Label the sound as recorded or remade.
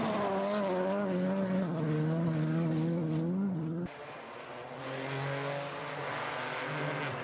recorded